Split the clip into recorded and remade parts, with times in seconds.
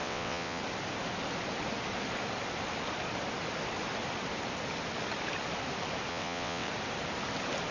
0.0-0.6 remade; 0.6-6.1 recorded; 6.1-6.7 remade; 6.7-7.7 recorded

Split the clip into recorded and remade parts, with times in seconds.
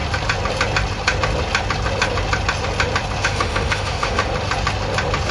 0.0-3.2 recorded; 3.2-4.2 remade; 4.2-5.3 recorded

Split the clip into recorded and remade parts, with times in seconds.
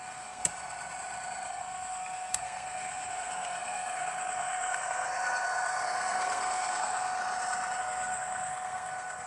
0.0-0.4 remade; 0.4-1.5 recorded; 1.5-7.2 remade; 7.2-7.8 recorded; 7.8-9.3 remade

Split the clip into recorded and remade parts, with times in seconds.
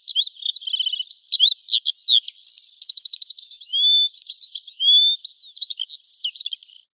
0.0-3.4 recorded; 3.4-5.0 remade; 5.0-6.9 recorded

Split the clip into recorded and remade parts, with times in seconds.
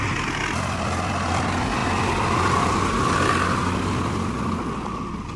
0.0-5.4 recorded